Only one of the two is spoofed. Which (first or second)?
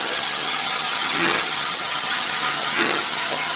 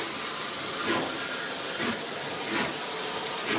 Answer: first